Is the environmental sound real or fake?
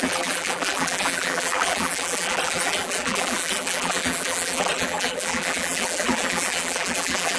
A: fake